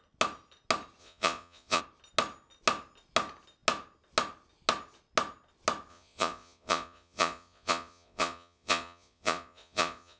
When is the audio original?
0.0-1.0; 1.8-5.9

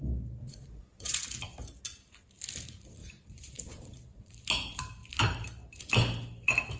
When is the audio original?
0.0-0.4; 1.2-3.0; 4.3-6.8

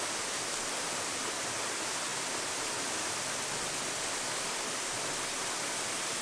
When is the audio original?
0.0-6.2